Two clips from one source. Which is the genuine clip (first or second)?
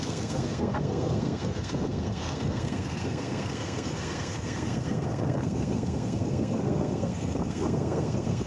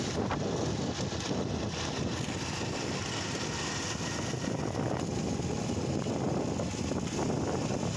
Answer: second